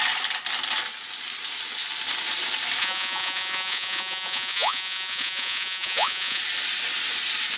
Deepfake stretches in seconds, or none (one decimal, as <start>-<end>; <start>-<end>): 2.8-6.4